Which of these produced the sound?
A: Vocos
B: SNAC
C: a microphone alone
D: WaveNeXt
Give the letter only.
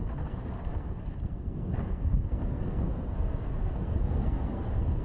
B